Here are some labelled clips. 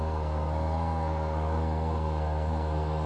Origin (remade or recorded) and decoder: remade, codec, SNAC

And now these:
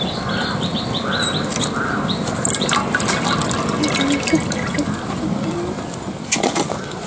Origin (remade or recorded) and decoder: recorded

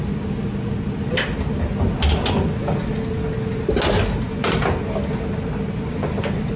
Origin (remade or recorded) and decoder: recorded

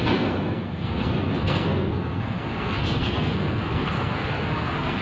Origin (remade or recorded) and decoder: remade, codec, SNAC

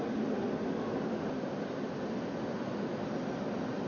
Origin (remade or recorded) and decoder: recorded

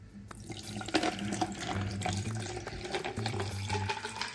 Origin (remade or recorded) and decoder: recorded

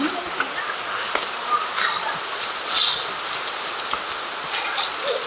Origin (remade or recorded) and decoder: recorded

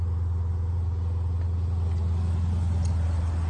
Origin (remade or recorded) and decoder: recorded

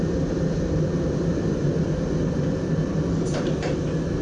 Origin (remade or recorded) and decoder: recorded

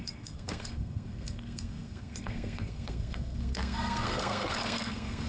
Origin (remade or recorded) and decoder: remade, codec, SNAC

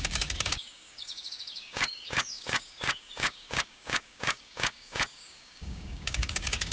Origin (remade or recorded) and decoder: remade, codec, DAC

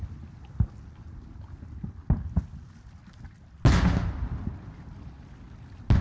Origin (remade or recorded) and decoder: recorded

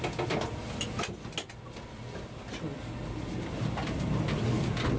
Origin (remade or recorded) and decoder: recorded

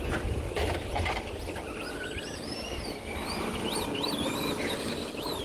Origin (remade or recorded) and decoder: remade, vocoder, BigVGAN v2